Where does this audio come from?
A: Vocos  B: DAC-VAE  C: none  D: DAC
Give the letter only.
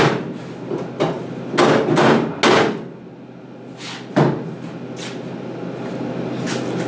C